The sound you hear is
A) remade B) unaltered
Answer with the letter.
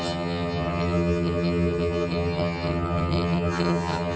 A